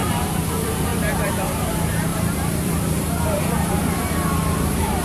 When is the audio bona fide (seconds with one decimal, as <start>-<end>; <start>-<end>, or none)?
0.0-0.5